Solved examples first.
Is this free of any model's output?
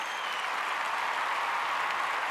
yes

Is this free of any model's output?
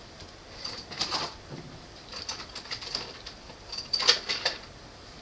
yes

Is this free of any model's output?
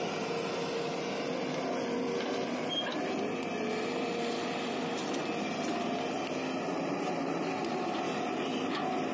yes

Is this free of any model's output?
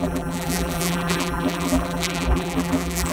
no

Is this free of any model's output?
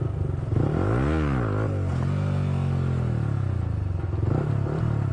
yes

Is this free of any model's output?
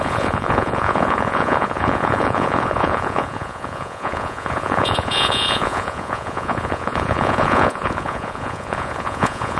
no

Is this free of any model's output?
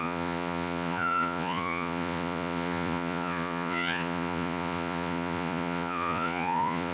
no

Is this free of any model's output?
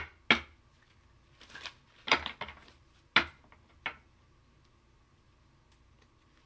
yes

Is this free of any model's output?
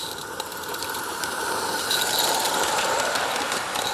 no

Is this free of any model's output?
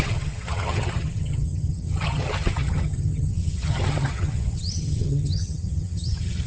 no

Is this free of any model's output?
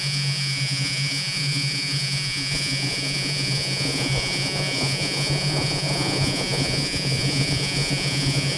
no